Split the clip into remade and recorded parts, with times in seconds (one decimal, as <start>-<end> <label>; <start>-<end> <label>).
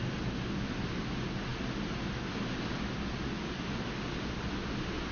0.0-5.1 recorded